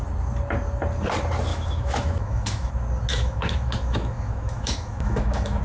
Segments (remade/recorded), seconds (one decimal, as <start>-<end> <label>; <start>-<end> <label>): 0.0-1.5 recorded; 1.5-2.7 remade; 2.7-3.1 recorded; 3.1-5.6 remade